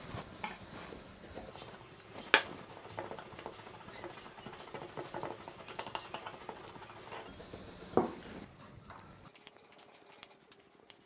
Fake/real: real